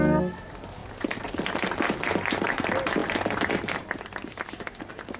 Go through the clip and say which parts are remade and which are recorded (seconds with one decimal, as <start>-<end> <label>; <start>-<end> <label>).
0.0-0.8 recorded; 0.8-1.5 remade; 1.5-3.0 recorded; 3.0-4.8 remade; 4.8-5.2 recorded